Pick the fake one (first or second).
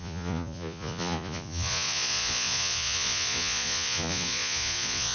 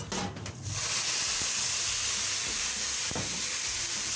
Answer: first